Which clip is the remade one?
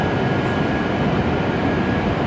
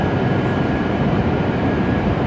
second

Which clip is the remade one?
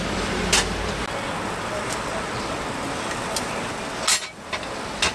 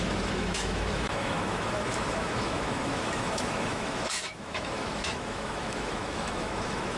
second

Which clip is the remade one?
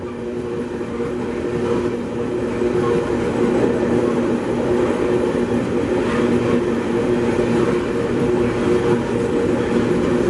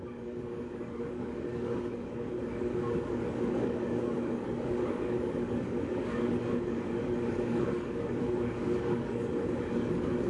second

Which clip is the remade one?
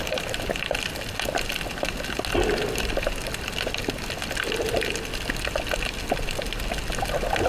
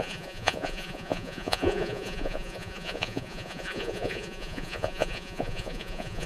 second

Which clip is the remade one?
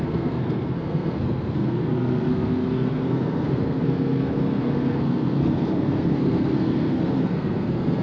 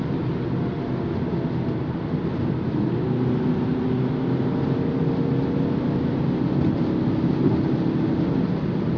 first